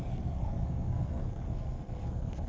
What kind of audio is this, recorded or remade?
remade